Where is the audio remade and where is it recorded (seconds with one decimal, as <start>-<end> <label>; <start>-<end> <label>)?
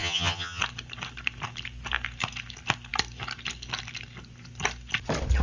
0.0-0.6 remade; 0.6-5.4 recorded